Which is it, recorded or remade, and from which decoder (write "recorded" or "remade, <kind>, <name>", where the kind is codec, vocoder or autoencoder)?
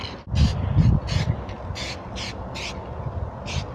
recorded